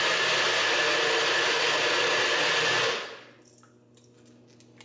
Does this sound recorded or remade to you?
recorded